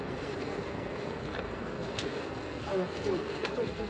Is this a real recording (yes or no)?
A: no